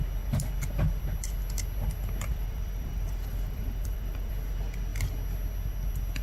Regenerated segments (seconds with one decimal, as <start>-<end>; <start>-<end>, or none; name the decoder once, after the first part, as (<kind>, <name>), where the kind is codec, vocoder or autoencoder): 2.3-4.3 (vocoder, BigVGAN v2)